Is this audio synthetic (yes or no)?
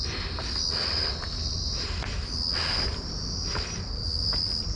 no